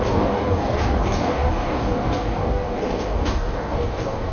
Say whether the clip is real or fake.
fake